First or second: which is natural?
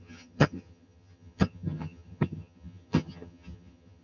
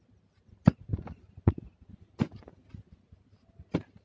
second